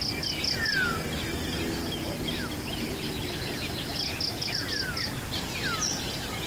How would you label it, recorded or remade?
recorded